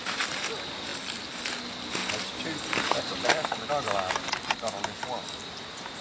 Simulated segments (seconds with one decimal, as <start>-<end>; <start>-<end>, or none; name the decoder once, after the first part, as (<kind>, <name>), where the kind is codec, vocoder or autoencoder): none